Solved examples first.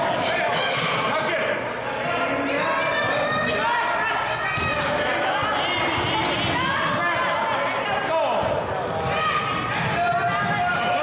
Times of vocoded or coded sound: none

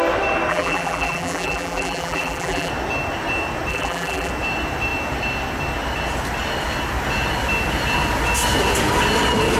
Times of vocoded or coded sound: 0.5-2.7 (vocoder, BigVGAN v2); 3.7-4.3

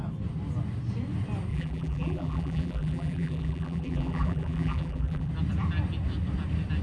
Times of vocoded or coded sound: 1.5-5.3 (vocoder, BigVGAN v2)